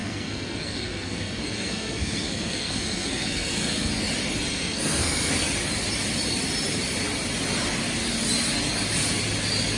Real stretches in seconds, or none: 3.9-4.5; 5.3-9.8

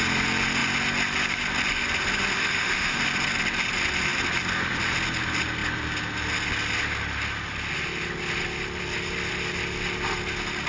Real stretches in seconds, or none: 0.0-2.4; 3.0-10.7

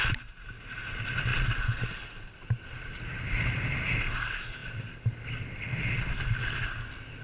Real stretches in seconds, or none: 0.0-7.2

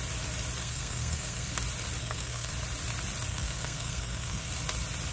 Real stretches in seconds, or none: 0.0-0.6; 1.5-2.0; 2.5-3.3; 4.5-5.1

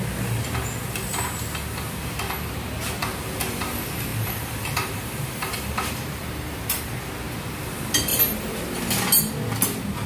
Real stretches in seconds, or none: 0.0-4.1; 7.1-10.1